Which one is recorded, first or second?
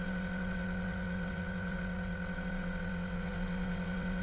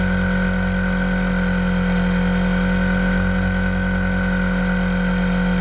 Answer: second